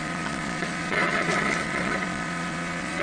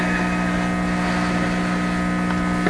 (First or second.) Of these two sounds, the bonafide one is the second